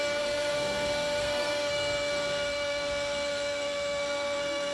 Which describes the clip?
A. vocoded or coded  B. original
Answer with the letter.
A